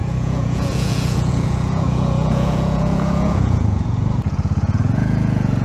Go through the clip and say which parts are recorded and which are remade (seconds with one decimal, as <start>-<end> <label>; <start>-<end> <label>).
0.0-5.6 remade